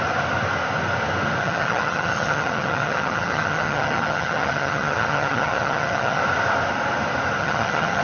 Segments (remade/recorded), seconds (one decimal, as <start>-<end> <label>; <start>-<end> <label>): 0.0-1.4 recorded; 1.4-6.2 remade; 6.2-7.4 recorded; 7.4-8.0 remade